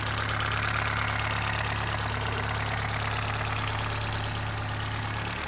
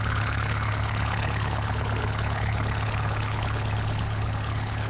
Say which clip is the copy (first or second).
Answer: second